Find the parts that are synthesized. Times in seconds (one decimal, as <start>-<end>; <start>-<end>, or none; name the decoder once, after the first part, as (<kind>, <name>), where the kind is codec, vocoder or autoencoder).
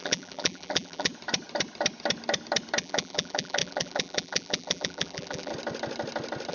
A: 0.0-1.1 (vocoder, BigVGAN v2); 2.8-5.5